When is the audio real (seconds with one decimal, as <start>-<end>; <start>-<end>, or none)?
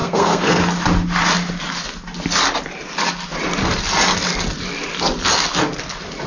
0.6-6.3